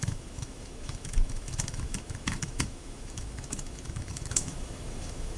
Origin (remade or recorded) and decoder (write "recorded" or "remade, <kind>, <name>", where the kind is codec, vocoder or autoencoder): remade, autoencoder, DAC-VAE